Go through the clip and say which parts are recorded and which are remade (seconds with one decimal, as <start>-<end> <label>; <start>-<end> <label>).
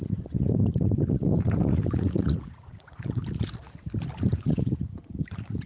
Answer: 0.0-3.2 remade; 3.2-4.3 recorded; 4.3-5.7 remade